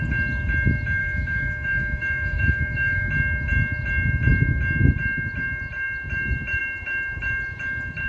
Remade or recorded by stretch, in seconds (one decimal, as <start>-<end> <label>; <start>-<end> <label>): 0.0-1.0 recorded; 1.0-3.1 remade; 3.1-8.1 recorded